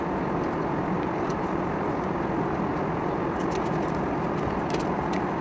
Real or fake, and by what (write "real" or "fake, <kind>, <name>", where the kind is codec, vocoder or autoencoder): real